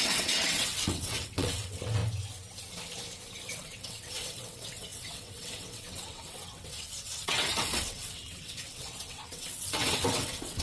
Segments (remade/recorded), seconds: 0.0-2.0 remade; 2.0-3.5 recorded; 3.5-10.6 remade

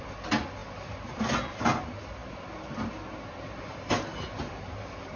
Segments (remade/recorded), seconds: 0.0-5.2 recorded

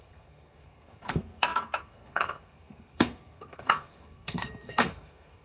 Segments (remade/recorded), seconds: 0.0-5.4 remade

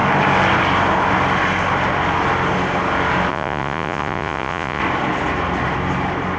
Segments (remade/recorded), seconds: 0.0-3.3 recorded; 3.3-4.8 remade; 4.8-6.4 recorded

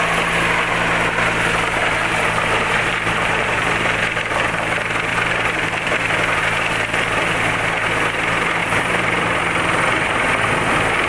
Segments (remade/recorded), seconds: 0.0-1.8 recorded; 1.8-4.0 remade; 4.0-5.1 recorded; 5.1-6.4 remade; 6.4-8.6 recorded; 8.6-9.4 remade; 9.4-11.1 recorded

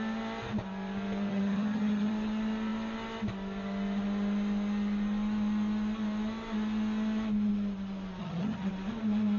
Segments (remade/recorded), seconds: 0.0-1.3 recorded; 1.3-2.1 remade; 2.1-8.2 recorded; 8.2-8.7 remade; 8.7-9.4 recorded